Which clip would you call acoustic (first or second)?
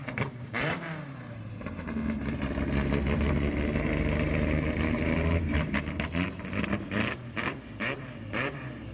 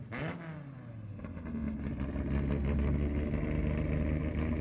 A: second